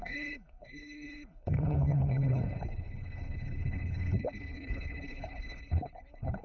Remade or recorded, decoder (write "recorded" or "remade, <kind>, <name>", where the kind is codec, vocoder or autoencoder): remade, codec, HILCodec